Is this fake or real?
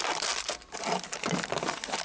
real